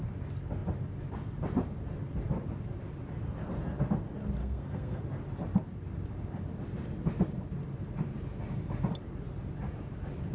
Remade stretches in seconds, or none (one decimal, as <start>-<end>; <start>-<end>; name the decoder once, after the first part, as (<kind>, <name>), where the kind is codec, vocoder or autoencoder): 4.4-5.0 (codec, SNAC)